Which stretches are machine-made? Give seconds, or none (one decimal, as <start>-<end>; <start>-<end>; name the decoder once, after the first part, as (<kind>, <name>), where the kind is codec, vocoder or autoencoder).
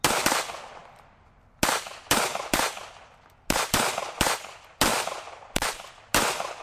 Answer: 4.9-5.9 (vocoder, BigVGAN v2)